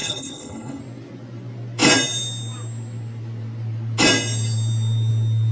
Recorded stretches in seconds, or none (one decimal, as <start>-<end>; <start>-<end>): 0.8-5.5